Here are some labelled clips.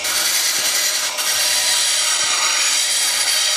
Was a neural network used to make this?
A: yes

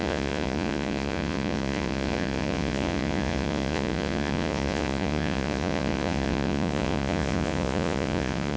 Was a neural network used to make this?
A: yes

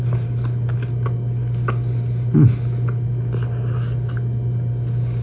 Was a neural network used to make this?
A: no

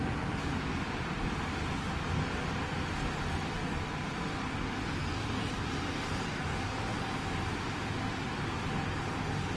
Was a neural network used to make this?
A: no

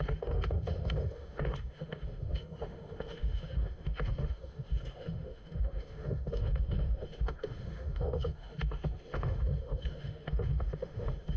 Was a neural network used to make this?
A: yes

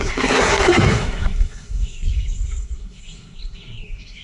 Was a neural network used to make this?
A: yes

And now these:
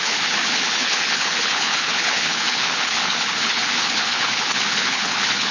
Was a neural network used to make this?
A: yes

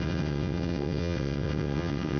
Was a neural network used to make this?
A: yes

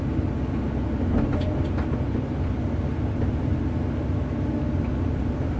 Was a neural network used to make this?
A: no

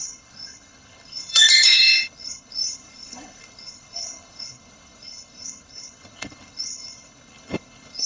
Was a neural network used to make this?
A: yes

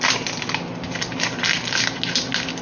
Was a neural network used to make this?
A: no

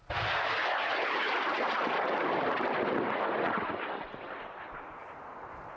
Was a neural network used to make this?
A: no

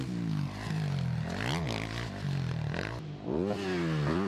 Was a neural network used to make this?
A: no